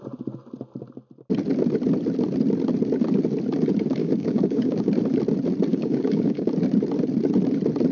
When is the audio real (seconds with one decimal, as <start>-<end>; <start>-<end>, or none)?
0.0-4.0; 4.9-5.7; 6.5-7.9